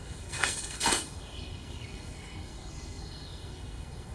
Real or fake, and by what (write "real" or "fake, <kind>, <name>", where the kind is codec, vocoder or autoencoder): fake, codec, SNAC